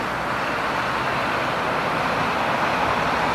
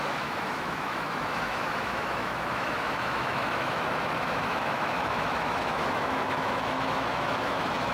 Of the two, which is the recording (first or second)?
first